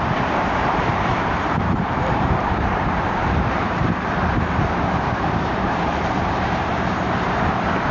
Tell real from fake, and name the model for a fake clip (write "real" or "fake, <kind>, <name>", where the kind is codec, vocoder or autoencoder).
fake, vocoder, BigVGAN v2